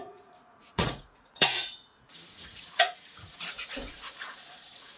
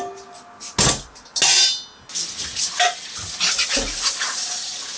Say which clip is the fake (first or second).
first